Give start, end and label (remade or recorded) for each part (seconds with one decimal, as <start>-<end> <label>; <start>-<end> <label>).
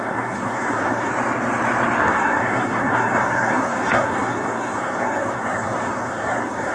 0.0-1.1 remade; 1.1-2.0 recorded; 2.0-6.7 remade